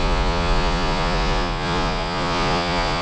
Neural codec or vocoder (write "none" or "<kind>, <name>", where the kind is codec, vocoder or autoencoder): vocoder, Vocos